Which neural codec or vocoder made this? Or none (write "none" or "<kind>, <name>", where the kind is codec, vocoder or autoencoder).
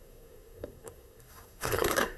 codec, SNAC